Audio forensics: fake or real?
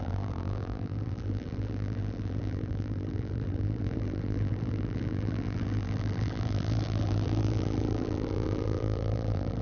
fake